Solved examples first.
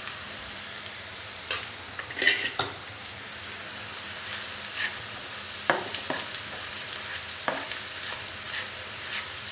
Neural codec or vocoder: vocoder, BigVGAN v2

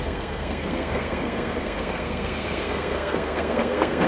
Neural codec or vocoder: codec, SNAC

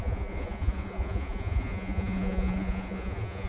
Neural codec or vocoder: vocoder, Vocos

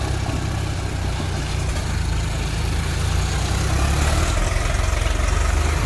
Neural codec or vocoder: none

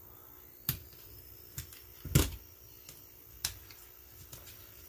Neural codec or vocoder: none